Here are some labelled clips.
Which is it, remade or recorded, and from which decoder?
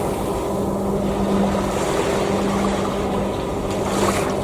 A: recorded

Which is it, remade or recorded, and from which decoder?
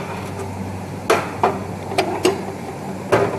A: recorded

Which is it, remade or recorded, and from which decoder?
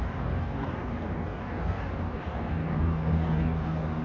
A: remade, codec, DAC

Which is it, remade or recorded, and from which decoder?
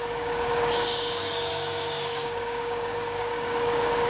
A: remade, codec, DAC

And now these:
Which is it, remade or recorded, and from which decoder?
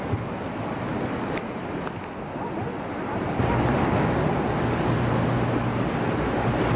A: recorded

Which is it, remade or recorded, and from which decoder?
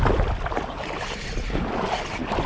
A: recorded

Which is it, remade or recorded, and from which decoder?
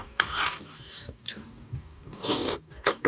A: remade, codec, DAC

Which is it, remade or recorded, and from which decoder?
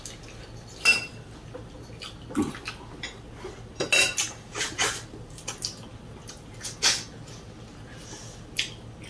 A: recorded